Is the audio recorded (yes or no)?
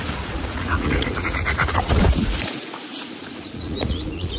no